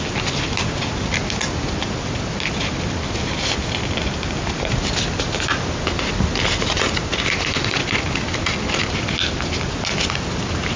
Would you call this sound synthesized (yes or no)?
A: no